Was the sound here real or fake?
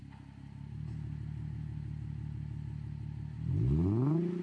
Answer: real